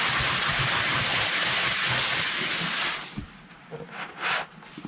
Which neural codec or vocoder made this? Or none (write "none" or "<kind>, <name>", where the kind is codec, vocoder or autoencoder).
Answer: none